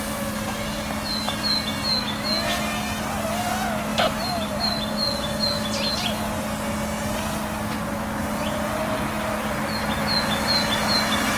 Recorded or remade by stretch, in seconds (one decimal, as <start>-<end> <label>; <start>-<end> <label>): 0.0-3.9 recorded; 3.9-4.7 remade; 4.7-11.4 recorded